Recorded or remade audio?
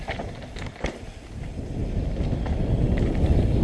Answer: recorded